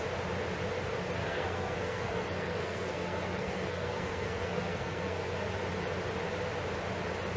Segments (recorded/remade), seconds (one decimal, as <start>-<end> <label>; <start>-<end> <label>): 0.0-1.2 recorded; 1.2-5.6 remade; 5.6-7.4 recorded